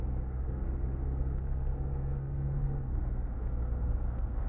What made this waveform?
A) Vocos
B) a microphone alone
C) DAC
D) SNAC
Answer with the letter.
D